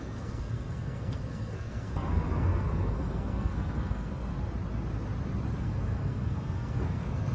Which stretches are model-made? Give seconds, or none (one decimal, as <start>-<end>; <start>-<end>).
0.0-4.3; 5.6-7.3